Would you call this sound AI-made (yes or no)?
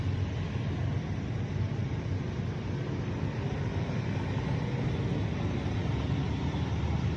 no